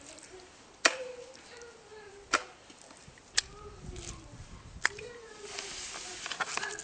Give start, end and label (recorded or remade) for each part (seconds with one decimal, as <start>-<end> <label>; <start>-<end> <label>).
0.0-6.8 recorded